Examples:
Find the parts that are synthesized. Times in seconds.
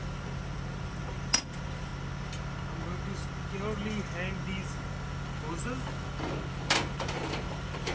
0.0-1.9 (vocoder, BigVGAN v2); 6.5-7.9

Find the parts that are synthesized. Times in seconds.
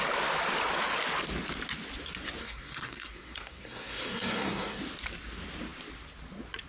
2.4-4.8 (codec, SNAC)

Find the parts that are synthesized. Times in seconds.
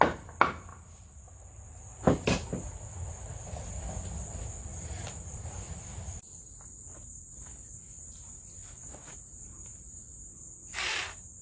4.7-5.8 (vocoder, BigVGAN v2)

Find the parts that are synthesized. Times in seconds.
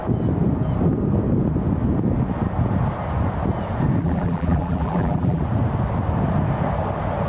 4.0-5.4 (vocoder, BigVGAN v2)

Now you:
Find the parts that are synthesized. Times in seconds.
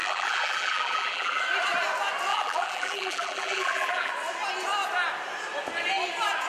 0.0-1.4 (vocoder, BigVGAN v2); 2.3-4.1